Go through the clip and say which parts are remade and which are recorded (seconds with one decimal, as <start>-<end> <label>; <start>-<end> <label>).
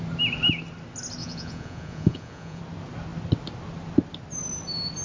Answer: 0.0-1.2 recorded; 1.2-2.6 remade; 2.6-5.0 recorded